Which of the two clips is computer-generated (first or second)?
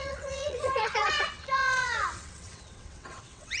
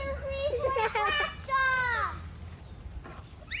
first